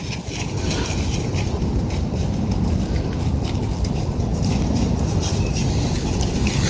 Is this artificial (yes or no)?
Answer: no